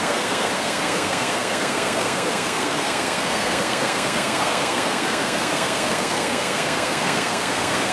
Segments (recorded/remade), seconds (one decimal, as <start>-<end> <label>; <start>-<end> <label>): 0.0-7.9 remade